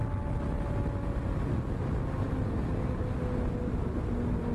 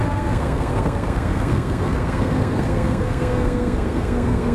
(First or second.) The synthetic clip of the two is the second